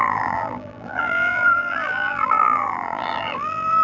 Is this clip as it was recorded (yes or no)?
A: no